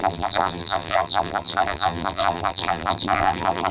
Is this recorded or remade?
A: remade